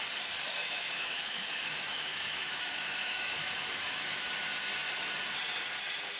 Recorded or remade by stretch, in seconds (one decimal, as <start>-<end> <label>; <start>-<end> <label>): 0.0-0.6 recorded; 0.6-4.3 remade; 4.3-6.2 recorded